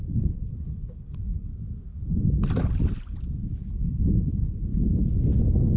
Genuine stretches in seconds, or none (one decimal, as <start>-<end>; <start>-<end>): 1.5-3.7; 4.7-5.8